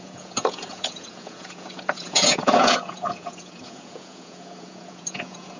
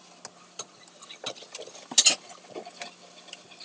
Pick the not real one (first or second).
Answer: first